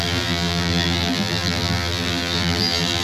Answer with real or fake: fake